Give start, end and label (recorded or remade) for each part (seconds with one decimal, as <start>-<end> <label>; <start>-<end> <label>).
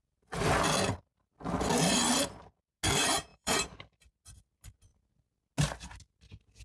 0.0-3.3 recorded; 3.3-4.1 remade; 4.1-6.6 recorded